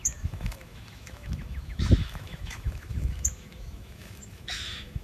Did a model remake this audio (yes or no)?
yes